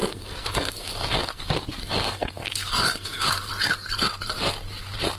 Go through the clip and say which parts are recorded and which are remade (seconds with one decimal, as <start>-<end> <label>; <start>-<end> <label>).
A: 0.0-1.4 remade; 1.4-1.8 recorded; 1.8-3.5 remade; 3.5-5.2 recorded